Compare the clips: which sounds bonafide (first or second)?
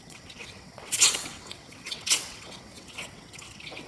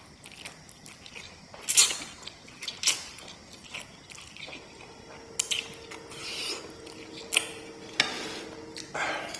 second